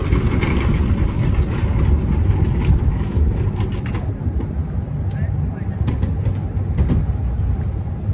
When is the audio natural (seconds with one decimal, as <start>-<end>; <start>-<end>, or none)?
0.0-2.9; 3.4-8.1